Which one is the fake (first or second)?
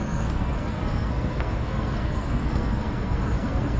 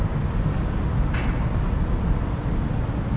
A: first